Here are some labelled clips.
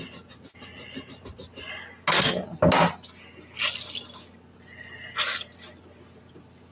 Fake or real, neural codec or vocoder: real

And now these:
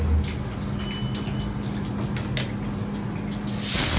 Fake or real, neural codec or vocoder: real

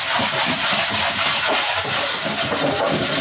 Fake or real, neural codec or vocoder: real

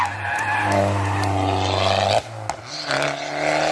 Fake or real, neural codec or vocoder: real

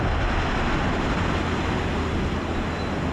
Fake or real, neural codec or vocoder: real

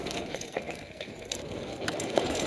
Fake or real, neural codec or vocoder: fake, codec, SNAC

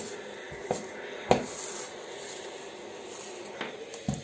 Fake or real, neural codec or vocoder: real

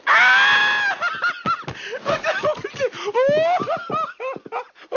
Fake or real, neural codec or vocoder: real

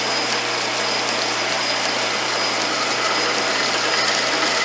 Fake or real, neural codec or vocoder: real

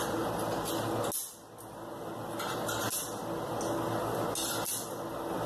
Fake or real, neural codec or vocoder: real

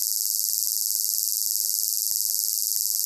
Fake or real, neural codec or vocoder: real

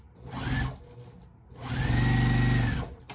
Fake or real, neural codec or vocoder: real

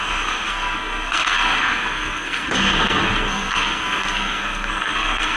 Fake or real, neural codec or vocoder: fake, codec, SNAC